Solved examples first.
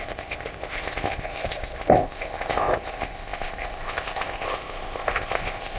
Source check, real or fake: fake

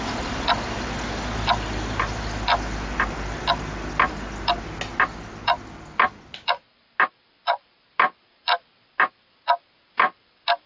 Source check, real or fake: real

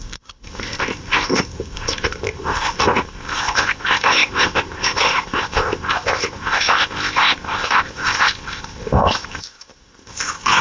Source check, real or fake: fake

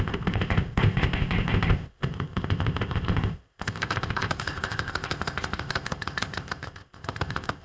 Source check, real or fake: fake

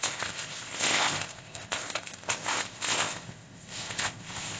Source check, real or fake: fake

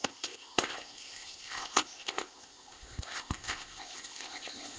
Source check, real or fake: fake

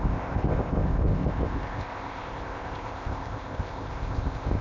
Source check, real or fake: fake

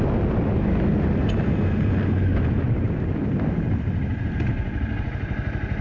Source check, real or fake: real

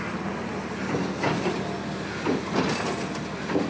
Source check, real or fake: real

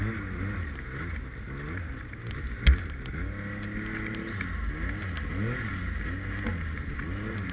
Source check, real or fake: real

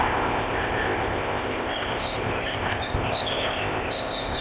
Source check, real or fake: fake